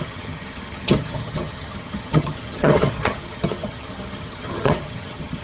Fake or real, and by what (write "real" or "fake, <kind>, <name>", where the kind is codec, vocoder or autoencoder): fake, vocoder, HiFi-GAN